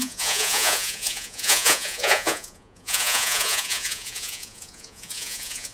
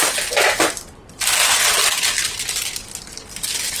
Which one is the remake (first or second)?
first